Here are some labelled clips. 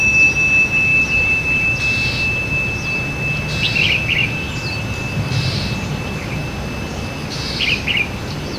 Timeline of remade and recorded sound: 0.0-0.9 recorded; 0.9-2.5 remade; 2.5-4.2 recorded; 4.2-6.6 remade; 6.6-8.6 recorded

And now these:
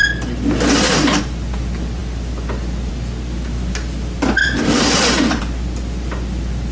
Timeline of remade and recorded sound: 0.0-4.4 recorded; 4.4-5.4 remade; 5.4-6.7 recorded

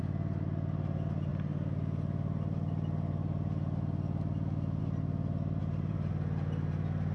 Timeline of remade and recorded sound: 0.0-5.6 recorded; 5.6-6.1 remade; 6.1-7.1 recorded

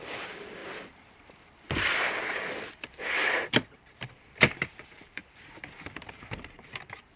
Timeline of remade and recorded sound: 0.0-0.6 remade; 0.6-2.8 recorded; 2.8-7.2 remade

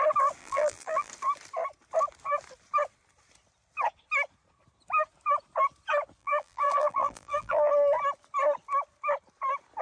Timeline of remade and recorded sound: 0.0-0.4 recorded; 0.4-1.1 remade; 1.1-6.2 recorded; 6.2-7.7 remade; 7.7-9.8 recorded

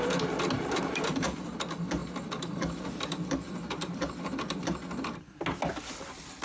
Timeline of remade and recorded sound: 0.0-2.0 recorded; 2.0-4.6 remade; 4.6-6.4 recorded

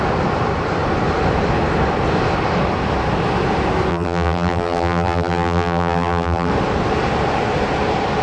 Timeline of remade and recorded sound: 0.0-3.9 recorded; 3.9-6.5 remade; 6.5-8.2 recorded